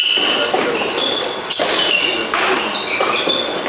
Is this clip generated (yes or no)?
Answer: no